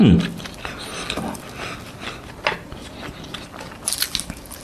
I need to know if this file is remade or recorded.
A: recorded